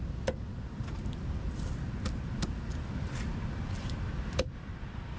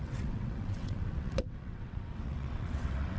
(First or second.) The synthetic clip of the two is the second